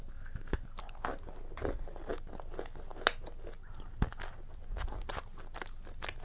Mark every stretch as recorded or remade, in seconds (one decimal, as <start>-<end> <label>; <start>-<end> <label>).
0.0-6.2 recorded